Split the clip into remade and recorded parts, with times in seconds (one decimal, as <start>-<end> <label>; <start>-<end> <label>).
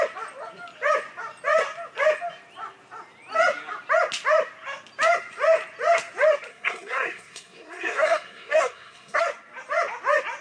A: 0.0-6.5 recorded; 6.5-9.2 remade; 9.2-10.4 recorded